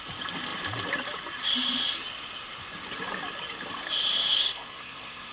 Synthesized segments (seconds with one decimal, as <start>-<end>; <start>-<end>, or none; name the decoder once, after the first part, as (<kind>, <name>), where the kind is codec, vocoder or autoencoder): 4.4-5.3 (codec, SNAC)